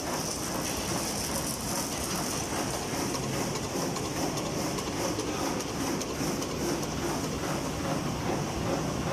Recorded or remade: recorded